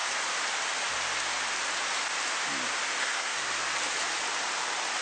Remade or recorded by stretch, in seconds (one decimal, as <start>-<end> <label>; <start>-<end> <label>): 0.0-3.0 recorded; 3.0-3.5 remade; 3.5-5.0 recorded